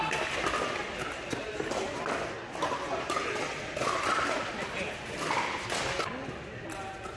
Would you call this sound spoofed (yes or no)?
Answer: no